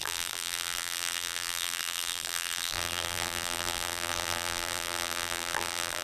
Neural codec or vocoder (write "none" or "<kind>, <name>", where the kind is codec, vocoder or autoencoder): vocoder, BigVGAN v2